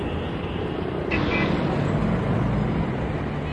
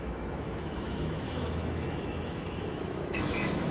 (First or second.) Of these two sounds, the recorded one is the first